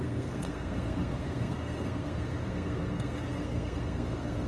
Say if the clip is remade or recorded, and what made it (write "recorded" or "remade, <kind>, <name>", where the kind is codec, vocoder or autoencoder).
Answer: remade, codec, SNAC